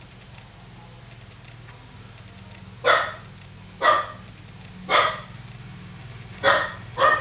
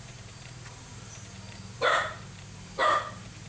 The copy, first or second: second